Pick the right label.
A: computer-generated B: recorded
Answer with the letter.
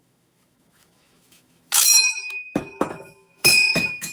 A